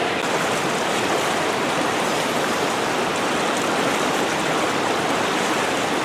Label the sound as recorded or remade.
remade